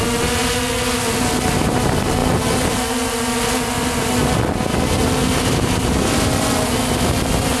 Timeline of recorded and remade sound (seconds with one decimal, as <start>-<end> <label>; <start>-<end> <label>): 0.0-7.6 recorded